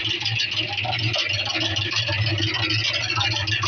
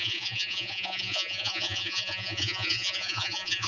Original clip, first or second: first